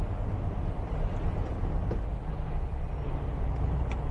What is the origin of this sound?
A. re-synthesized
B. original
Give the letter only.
B